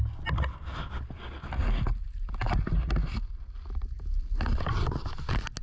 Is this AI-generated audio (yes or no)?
no